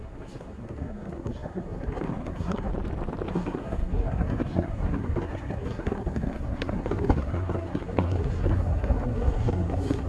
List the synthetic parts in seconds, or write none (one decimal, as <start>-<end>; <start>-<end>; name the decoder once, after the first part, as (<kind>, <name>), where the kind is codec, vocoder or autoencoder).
0.0-2.7 (codec, SNAC); 3.3-10.1